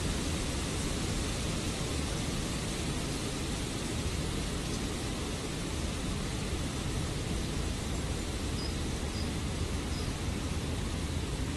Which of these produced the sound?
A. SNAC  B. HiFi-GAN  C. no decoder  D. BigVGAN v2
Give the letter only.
C